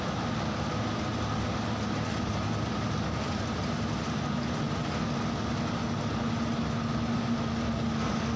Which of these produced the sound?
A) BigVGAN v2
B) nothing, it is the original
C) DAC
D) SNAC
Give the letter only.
B